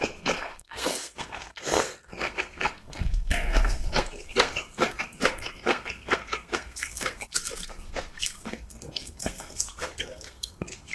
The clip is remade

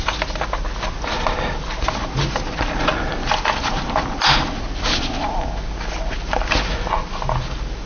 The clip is recorded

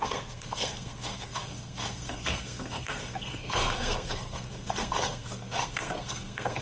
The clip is remade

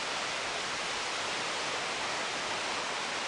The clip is recorded